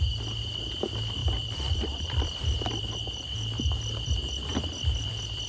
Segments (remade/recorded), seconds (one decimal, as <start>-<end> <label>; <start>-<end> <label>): 0.0-1.2 recorded; 1.2-2.8 remade; 2.8-4.5 recorded; 4.5-5.5 remade